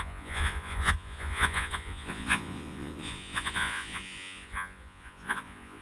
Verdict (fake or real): fake